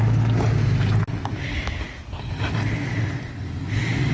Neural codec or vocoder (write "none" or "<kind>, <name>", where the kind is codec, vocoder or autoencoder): none